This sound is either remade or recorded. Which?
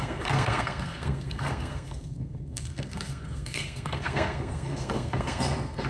remade